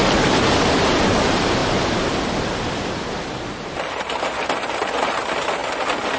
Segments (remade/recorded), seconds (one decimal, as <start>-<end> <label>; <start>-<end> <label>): 0.0-1.6 recorded; 1.6-4.0 remade; 4.0-5.6 recorded; 5.6-6.2 remade